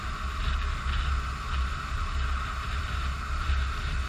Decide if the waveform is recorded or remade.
recorded